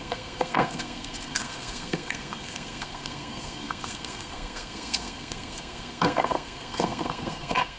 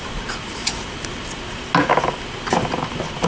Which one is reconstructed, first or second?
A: first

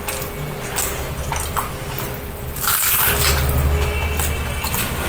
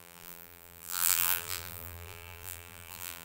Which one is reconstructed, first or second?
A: second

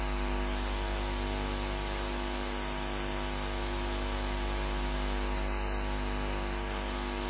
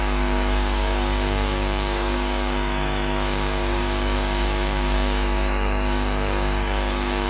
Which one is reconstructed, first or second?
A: second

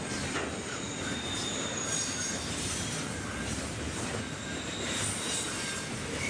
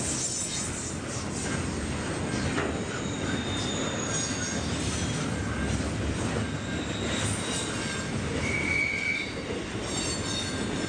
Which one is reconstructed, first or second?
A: first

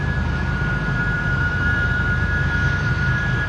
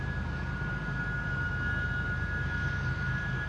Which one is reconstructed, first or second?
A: first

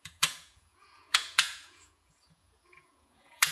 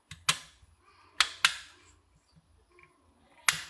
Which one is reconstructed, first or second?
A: first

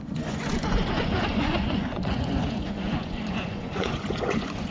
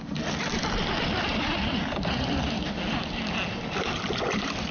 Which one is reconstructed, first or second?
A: first